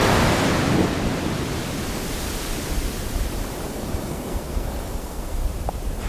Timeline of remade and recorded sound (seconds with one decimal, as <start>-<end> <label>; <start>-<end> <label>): 0.0-3.7 recorded; 3.7-5.4 remade; 5.4-6.1 recorded